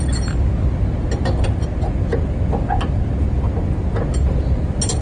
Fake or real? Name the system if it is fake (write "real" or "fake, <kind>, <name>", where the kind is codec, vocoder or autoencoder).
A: real